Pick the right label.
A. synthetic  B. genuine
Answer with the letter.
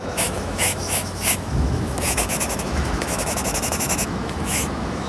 A